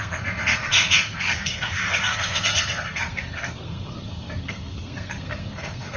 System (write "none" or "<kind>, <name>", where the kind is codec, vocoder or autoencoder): codec, SNAC